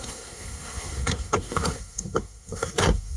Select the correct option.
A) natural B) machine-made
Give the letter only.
B